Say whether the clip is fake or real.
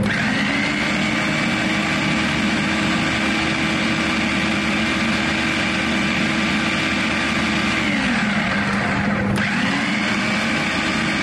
real